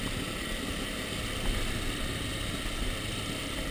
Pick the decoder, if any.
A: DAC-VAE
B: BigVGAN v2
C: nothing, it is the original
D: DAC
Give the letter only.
C